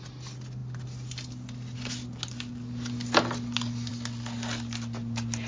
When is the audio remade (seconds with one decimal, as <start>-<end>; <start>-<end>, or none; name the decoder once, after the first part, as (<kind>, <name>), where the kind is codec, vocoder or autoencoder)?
none